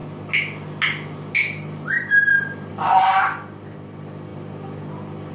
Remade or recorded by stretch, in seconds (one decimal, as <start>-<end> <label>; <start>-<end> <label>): 0.0-5.3 recorded